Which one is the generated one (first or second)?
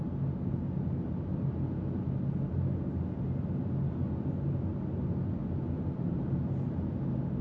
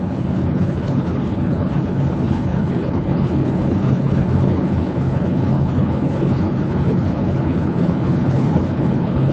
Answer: second